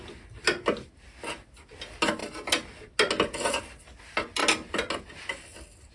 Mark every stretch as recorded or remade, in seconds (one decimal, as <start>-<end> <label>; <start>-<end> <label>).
0.0-5.9 recorded